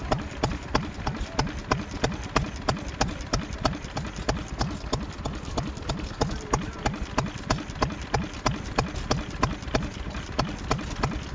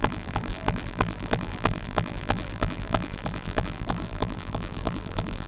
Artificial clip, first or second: second